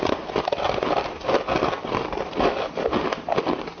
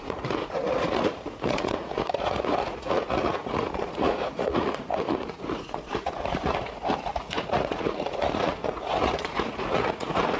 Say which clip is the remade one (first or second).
second